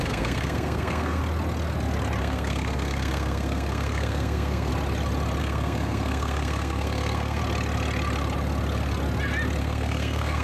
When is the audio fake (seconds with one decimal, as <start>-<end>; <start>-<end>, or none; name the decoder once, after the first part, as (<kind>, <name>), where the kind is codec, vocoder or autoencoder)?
0.0-1.2 (codec, SNAC); 2.2-4.7; 5.4-7.4; 9.6-10.4